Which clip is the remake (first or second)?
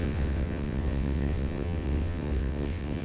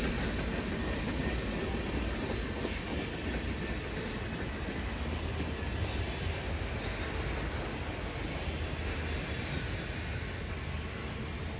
first